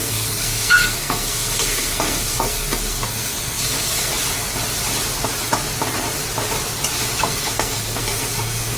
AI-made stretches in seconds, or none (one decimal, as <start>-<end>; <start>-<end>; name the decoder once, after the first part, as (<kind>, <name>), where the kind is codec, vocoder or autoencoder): 0.0-4.1 (codec, SNAC); 7.2-8.8